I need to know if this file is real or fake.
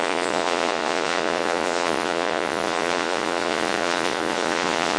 fake